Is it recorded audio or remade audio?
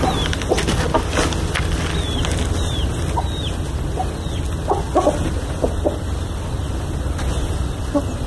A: recorded